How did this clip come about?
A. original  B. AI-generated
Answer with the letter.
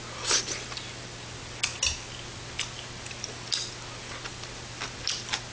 A